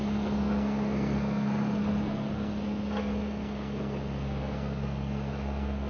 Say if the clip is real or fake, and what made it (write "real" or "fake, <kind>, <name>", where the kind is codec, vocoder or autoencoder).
fake, codec, SNAC